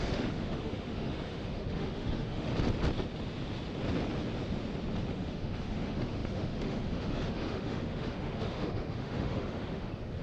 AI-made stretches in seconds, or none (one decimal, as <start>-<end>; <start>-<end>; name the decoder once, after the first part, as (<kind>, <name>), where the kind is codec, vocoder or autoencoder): 0.0-2.5 (autoencoder, DAC-VAE); 5.1-10.2